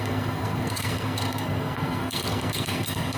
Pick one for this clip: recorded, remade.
remade